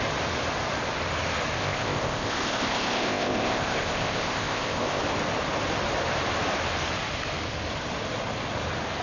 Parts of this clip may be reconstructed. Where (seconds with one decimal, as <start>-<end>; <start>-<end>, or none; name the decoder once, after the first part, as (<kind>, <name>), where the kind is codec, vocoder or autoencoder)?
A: 1.6-5.0 (codec, ZipCodec)